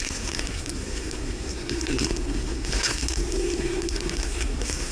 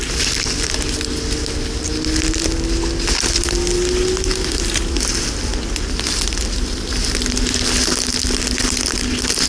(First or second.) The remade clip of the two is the first